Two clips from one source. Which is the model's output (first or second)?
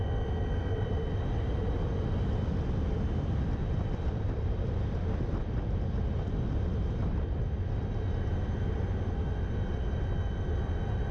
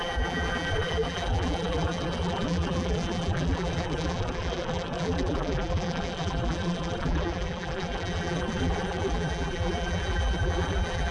second